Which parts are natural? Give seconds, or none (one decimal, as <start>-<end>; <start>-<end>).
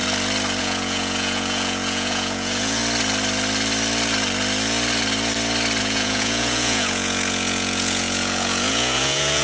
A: 0.0-0.6; 2.8-5.8